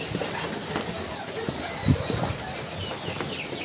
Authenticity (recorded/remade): recorded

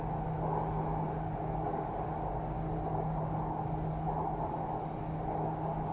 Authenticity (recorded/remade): recorded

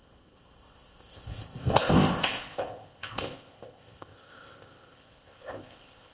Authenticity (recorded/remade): remade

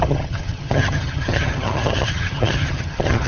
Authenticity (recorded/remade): remade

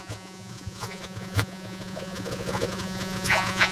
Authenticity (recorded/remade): remade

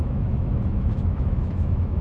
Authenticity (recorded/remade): remade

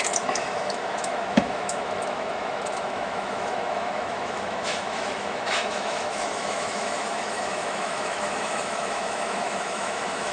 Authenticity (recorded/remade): remade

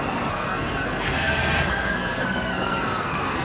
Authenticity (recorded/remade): remade